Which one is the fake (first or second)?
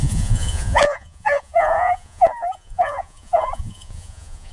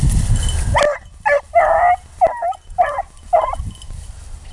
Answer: first